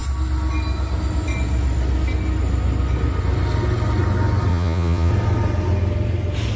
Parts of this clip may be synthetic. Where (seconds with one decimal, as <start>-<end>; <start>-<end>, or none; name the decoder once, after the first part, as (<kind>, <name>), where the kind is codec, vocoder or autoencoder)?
4.5-5.1 (vocoder, Vocos)